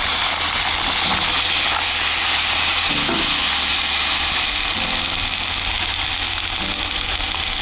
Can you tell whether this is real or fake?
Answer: real